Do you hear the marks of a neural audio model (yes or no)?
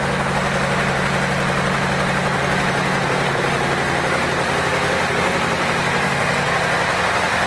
no